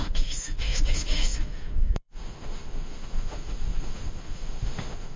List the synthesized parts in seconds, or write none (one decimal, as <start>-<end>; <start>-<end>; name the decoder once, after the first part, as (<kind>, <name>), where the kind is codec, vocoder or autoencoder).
0.0-5.2 (autoencoder, DAC-VAE)